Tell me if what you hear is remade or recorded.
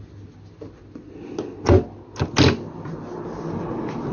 recorded